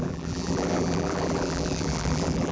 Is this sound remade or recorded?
remade